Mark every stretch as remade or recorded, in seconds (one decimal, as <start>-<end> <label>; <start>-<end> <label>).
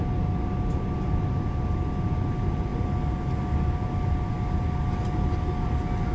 0.0-6.1 recorded